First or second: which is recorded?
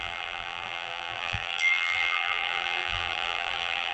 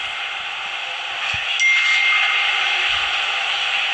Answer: second